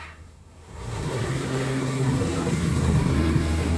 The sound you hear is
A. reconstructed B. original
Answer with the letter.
A